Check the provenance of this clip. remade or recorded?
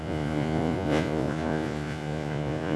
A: remade